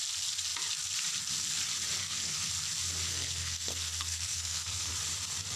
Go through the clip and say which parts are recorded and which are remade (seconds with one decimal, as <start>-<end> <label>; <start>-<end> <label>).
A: 0.0-2.0 recorded; 2.0-2.5 remade; 2.5-3.1 recorded; 3.1-4.9 remade; 4.9-5.6 recorded